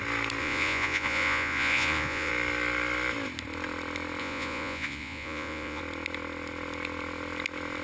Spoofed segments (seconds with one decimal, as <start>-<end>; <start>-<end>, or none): 0.4-2.3; 4.2-5.8